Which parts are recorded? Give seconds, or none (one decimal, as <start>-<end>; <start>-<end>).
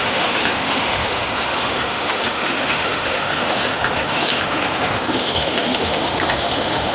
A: none